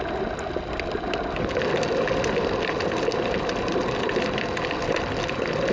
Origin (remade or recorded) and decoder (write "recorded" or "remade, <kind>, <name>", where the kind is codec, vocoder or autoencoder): recorded